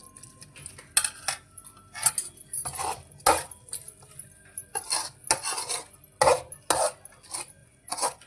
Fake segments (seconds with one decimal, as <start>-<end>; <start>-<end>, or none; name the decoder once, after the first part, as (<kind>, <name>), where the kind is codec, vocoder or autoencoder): 7.6-8.3 (vocoder, Vocos)